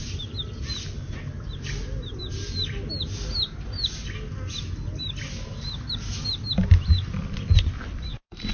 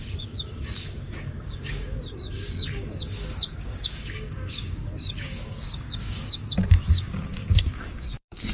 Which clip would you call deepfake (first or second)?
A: second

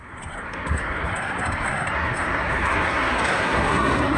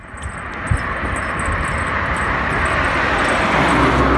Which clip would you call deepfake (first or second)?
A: first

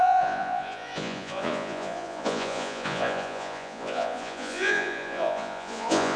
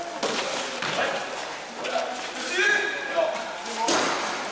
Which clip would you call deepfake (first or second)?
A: first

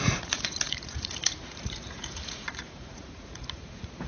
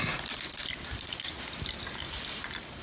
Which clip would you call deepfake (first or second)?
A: first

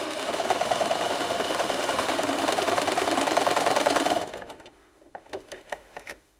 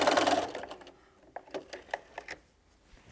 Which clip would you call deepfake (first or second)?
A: first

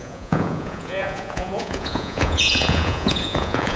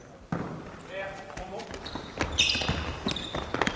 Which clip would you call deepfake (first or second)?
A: first